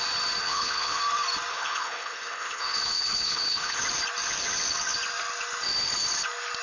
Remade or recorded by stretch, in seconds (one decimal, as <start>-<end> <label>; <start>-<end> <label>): 0.0-0.4 recorded; 0.4-1.0 remade; 1.0-1.5 recorded; 1.5-3.8 remade; 3.8-6.6 recorded